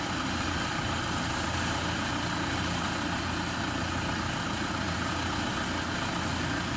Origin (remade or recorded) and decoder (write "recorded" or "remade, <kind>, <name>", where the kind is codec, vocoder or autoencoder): recorded